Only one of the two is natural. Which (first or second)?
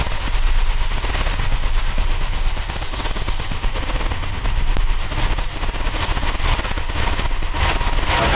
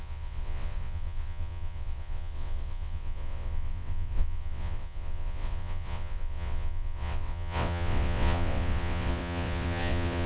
first